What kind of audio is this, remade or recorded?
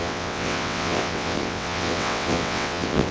remade